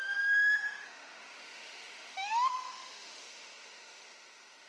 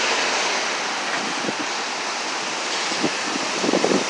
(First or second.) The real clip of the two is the second